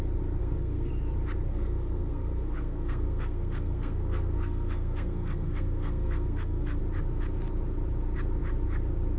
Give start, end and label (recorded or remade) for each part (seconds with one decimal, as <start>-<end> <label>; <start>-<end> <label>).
0.0-0.4 recorded; 0.4-0.9 remade; 0.9-1.5 recorded; 1.5-6.8 remade; 6.8-9.2 recorded